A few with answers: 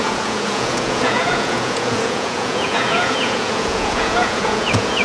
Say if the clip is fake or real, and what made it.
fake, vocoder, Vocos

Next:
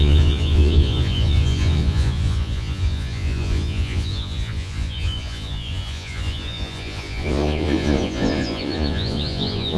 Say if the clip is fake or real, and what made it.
fake, vocoder, Vocos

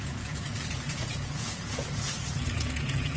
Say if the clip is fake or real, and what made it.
fake, vocoder, Vocos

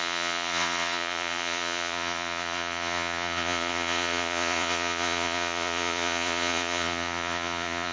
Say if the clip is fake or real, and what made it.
fake, vocoder, Vocos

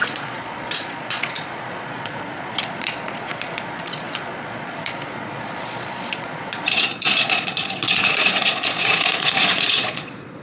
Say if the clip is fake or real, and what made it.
fake, vocoder, Vocos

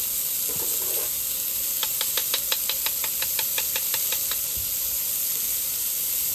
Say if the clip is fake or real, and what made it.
real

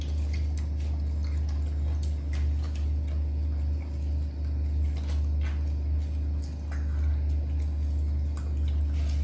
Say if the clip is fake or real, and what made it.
real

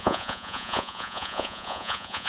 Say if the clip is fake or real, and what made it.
fake, vocoder, Vocos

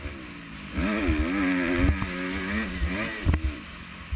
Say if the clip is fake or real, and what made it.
real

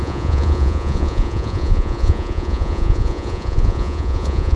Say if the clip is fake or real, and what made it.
fake, vocoder, Vocos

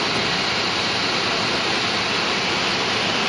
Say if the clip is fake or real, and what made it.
real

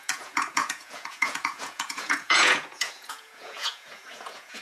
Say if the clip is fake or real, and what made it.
fake, vocoder, Vocos